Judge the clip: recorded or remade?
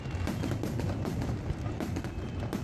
recorded